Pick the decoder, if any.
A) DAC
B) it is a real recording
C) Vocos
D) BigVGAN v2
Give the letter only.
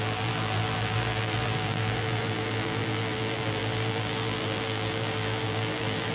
D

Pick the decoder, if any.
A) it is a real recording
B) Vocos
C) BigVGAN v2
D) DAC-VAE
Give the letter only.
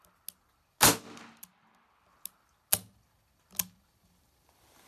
A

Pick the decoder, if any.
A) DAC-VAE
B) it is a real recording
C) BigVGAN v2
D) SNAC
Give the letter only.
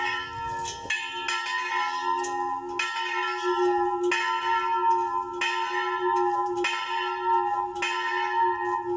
B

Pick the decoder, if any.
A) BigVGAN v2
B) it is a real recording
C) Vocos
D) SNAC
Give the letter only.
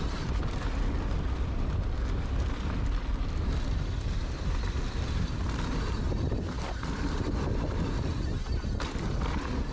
B